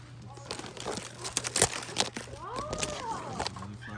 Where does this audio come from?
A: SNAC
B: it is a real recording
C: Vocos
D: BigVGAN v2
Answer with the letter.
B